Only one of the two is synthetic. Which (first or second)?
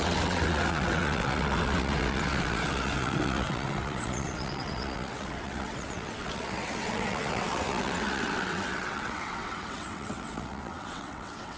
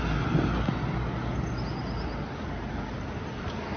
first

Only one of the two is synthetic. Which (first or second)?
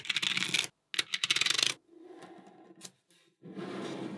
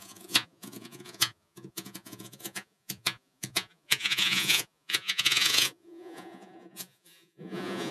second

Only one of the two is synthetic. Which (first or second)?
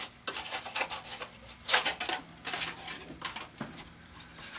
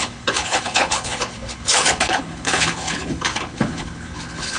second